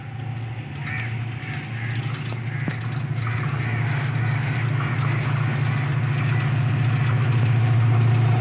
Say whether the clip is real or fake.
real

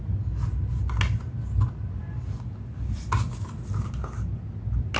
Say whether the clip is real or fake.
real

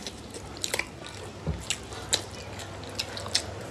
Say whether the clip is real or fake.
real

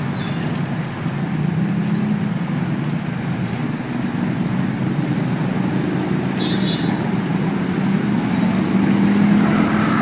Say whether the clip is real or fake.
real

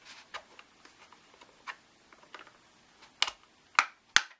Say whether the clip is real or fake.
real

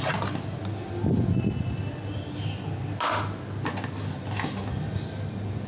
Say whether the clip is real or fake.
real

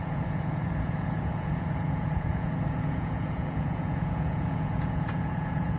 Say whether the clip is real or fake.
fake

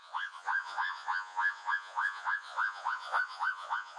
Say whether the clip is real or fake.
fake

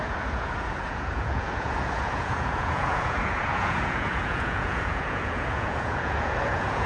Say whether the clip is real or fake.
fake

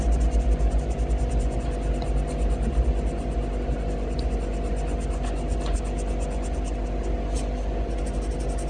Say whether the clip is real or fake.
real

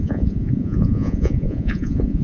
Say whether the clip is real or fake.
fake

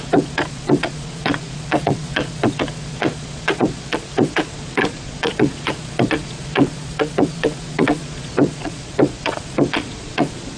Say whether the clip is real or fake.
fake